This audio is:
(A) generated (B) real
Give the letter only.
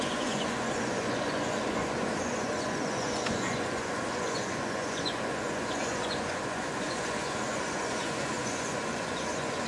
A